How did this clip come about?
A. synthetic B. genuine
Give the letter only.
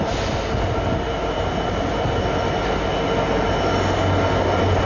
B